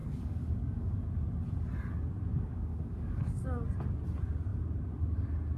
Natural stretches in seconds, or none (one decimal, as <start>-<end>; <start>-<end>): 1.1-2.3; 3.6-5.6